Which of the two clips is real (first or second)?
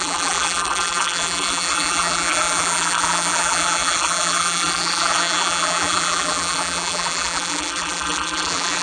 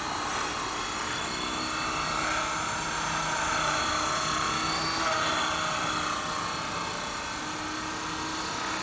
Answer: second